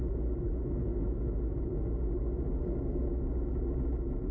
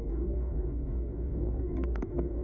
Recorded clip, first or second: first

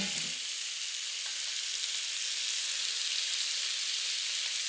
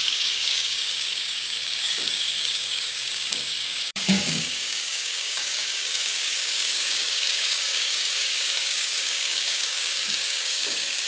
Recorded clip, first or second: first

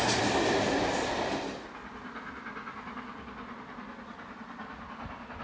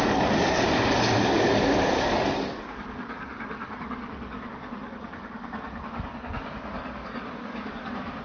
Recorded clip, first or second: first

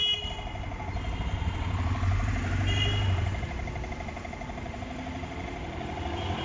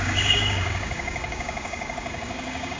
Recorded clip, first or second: first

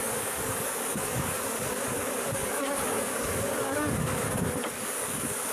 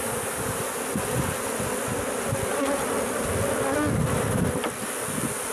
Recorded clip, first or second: second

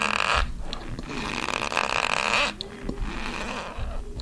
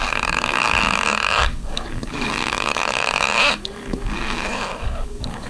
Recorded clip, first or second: first